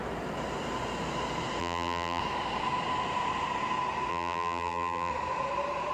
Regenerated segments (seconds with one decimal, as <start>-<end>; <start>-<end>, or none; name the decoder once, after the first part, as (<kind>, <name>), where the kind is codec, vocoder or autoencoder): 1.6-2.2 (vocoder, BigVGAN v2); 4.1-5.1